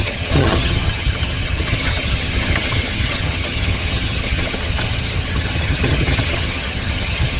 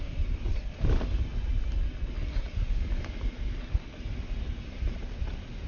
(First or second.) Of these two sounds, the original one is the second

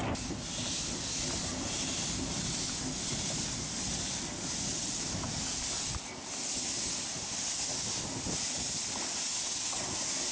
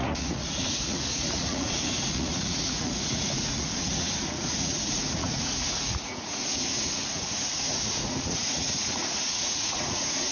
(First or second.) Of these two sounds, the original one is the first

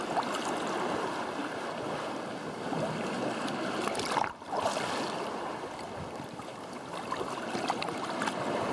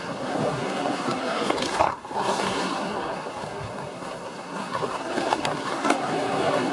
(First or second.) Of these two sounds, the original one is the first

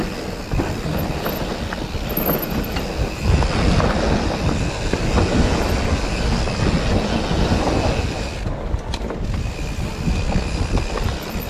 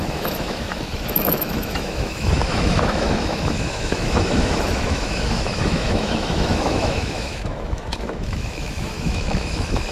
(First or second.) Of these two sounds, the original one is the first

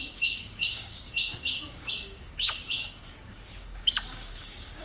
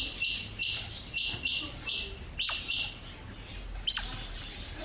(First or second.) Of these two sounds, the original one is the second